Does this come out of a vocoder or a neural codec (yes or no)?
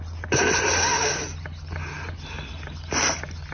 no